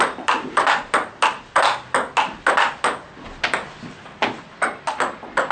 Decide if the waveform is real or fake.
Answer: real